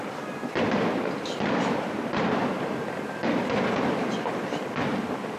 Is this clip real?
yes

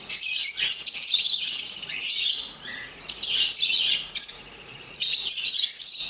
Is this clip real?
no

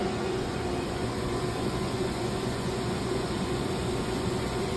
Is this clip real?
no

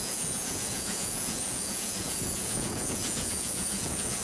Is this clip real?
no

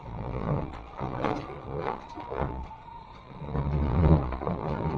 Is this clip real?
no